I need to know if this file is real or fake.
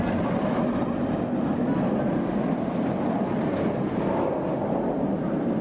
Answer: real